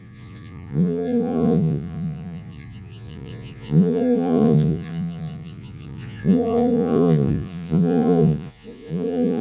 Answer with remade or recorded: remade